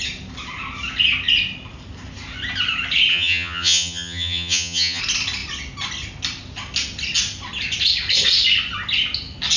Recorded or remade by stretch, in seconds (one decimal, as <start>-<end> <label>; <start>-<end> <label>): 0.0-3.1 recorded; 3.1-5.0 remade; 5.0-9.6 recorded